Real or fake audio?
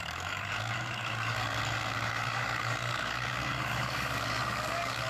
fake